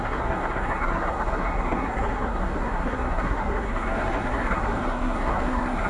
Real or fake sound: fake